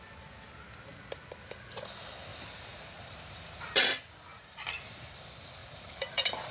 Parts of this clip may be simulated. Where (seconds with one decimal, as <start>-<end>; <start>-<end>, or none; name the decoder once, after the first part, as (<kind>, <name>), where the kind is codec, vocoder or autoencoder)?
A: 2.3-3.8 (vocoder, BigVGAN v2); 4.3-5.1; 5.6-6.5